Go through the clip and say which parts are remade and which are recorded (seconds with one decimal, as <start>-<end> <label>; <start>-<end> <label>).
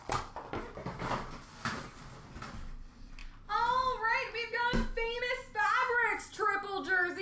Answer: 0.0-7.2 recorded